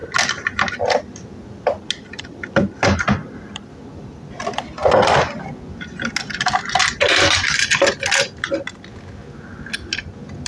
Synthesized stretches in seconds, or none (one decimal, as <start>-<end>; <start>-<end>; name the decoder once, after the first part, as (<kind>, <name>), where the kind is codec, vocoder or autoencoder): none